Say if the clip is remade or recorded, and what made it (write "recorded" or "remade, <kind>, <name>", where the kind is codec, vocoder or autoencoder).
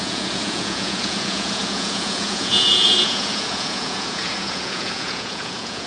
remade, vocoder, Vocos